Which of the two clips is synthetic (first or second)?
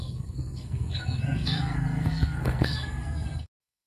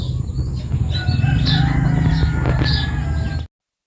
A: first